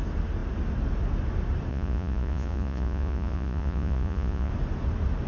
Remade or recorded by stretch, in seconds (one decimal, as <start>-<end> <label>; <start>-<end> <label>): 0.0-1.7 recorded; 1.7-4.5 remade; 4.5-5.3 recorded